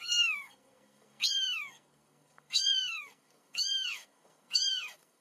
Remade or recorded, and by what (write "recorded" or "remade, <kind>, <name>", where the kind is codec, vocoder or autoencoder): remade, codec, SNAC